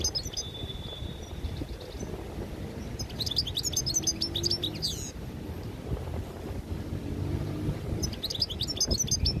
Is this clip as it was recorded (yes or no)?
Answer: yes